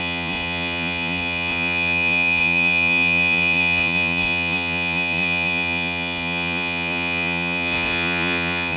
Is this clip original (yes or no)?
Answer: no